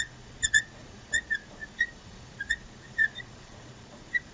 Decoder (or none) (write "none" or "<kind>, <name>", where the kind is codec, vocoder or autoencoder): vocoder, Vocos